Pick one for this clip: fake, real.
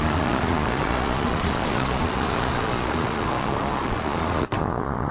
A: fake